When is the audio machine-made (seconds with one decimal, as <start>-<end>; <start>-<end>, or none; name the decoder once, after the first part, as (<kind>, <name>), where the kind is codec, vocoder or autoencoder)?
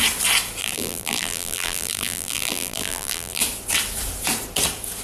0.6-3.4 (vocoder, BigVGAN v2)